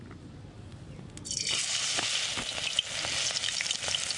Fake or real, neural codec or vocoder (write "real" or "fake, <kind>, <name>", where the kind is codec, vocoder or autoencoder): real